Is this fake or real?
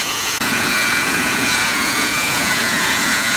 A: fake